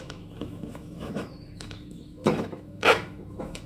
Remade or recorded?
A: remade